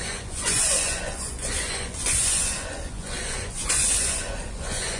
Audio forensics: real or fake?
fake